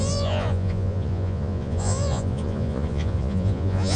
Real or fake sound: fake